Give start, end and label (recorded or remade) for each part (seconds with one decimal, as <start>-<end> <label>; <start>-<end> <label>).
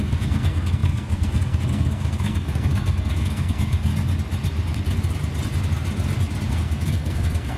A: 0.0-3.9 remade; 3.9-6.5 recorded; 6.5-7.6 remade